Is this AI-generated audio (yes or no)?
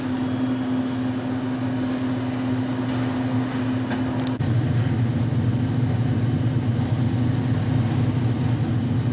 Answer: no